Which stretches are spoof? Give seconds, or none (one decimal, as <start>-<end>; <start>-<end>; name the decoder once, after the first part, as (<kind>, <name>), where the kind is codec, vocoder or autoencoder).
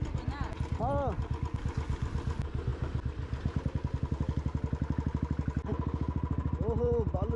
none